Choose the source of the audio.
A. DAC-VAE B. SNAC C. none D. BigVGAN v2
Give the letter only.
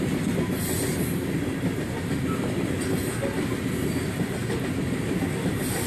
C